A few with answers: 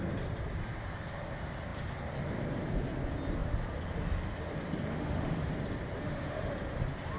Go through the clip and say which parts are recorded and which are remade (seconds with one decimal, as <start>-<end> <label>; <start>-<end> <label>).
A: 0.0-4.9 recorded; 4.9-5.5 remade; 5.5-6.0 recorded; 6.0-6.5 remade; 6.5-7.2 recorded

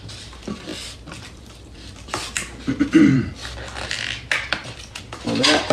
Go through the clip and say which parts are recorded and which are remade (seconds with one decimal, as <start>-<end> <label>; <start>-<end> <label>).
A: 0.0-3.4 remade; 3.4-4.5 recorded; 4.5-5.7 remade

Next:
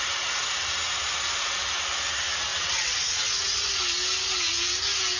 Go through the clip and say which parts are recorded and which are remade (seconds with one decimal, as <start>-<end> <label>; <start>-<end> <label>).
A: 0.0-2.5 recorded; 2.5-3.8 remade; 3.8-5.2 recorded

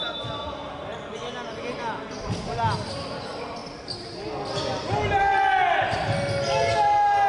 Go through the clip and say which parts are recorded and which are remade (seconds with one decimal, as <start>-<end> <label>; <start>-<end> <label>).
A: 0.0-7.3 recorded

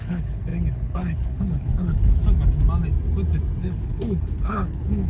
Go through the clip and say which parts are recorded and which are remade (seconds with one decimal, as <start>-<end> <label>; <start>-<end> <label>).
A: 0.0-2.2 remade; 2.2-3.6 recorded; 3.6-5.1 remade

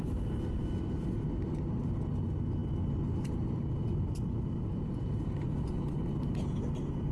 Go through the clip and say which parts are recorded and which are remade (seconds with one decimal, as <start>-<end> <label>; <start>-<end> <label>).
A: 0.0-7.1 recorded

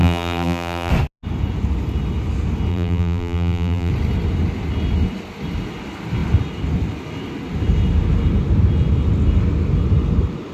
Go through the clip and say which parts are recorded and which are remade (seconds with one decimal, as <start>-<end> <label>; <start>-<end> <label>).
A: 0.0-0.9 remade; 0.9-2.7 recorded; 2.7-3.9 remade; 3.9-10.5 recorded

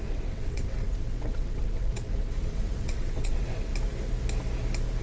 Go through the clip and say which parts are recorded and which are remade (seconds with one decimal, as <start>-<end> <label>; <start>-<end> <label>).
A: 0.0-3.7 remade; 3.7-5.0 recorded